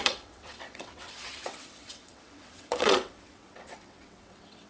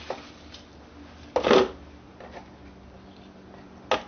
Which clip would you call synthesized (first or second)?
first